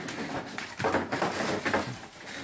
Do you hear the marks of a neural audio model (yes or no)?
no